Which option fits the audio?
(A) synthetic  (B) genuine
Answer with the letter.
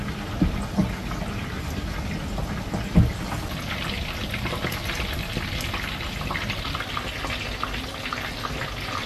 B